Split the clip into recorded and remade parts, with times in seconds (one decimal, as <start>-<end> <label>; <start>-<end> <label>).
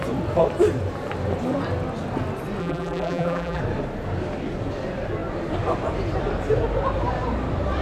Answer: 0.0-2.6 recorded; 2.6-3.6 remade; 3.6-7.8 recorded